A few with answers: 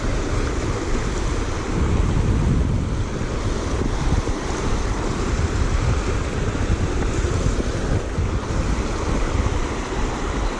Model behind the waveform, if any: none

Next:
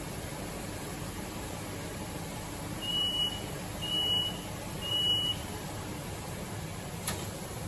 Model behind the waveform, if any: vocoder, BigVGAN v2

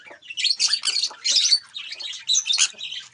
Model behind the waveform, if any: none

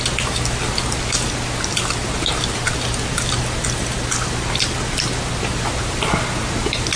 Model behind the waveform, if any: none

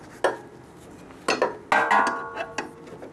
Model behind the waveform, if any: none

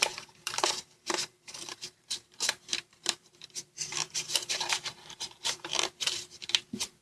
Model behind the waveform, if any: vocoder, BigVGAN v2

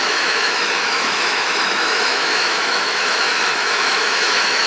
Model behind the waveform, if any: autoencoder, DAC-VAE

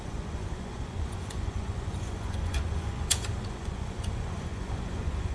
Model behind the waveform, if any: vocoder, Vocos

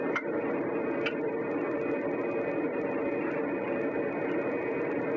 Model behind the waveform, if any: none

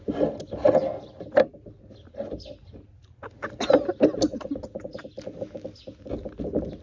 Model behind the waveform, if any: none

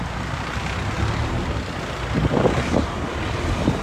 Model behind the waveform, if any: none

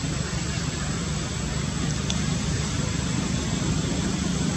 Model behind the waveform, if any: none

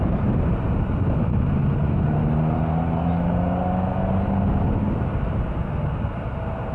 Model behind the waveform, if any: none